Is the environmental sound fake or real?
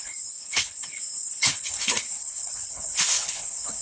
fake